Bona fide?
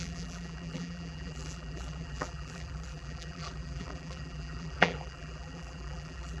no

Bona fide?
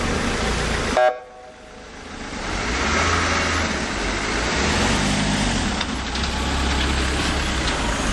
yes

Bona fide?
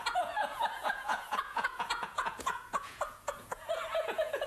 no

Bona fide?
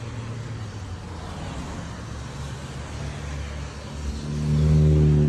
yes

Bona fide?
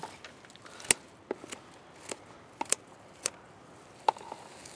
yes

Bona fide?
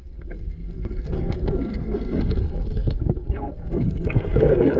no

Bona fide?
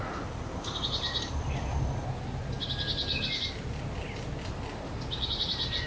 yes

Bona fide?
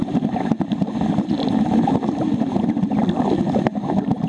yes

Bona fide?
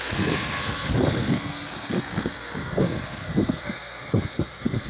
no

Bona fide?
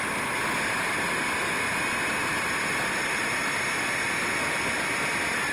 yes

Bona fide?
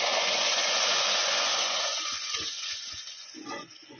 no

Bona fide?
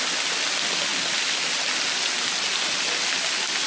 yes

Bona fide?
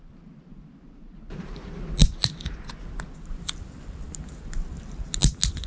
yes